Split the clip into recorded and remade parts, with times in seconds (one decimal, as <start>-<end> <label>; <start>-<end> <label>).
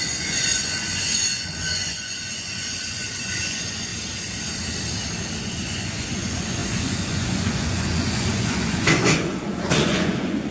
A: 0.0-3.9 remade; 3.9-5.4 recorded; 5.4-10.5 remade